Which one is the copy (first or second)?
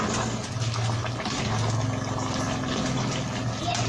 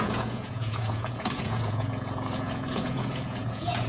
second